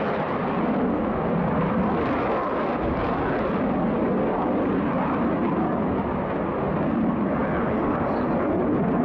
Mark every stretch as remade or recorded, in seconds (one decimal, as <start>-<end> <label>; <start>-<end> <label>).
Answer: 0.0-9.0 recorded